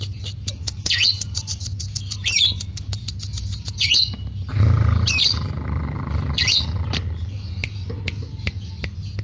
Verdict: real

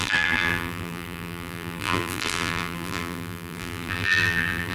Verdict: fake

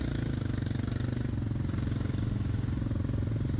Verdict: real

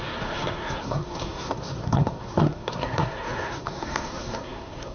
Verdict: fake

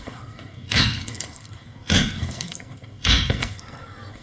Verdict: fake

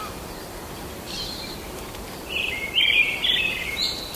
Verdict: fake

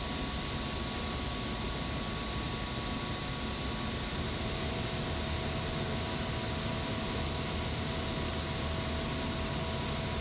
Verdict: real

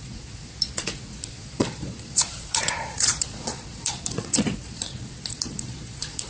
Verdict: fake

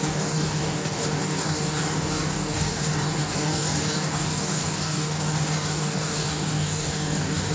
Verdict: fake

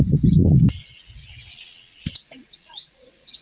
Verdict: fake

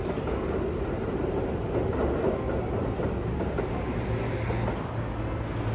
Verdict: real